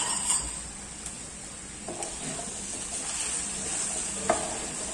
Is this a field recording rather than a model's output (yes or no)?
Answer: yes